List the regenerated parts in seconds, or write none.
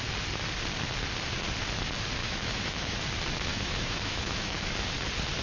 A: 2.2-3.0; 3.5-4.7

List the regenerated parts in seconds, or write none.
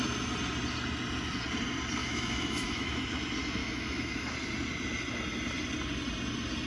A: 2.0-3.0; 3.6-4.3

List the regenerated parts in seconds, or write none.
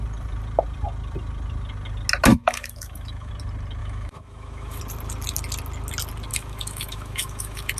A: 2.3-3.3; 3.8-4.8; 6.3-7.8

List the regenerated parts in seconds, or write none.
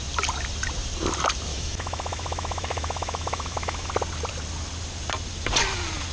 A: 1.5-3.9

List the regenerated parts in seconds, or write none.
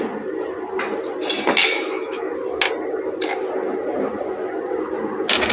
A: 1.6-2.3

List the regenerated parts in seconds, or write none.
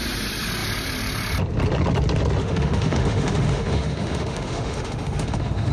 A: 2.4-5.7